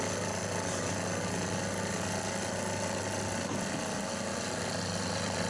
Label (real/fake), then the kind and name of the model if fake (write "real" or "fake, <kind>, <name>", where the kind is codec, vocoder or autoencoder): real